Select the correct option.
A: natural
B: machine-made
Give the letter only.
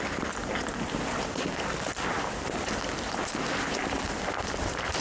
B